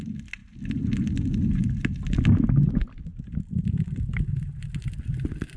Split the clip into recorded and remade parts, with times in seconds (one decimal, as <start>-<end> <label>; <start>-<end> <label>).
0.0-5.6 recorded